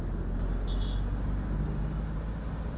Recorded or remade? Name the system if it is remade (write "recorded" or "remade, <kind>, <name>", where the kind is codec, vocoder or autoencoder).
recorded